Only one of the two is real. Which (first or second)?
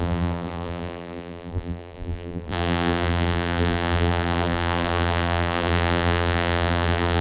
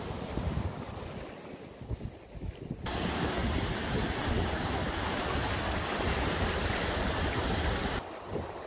second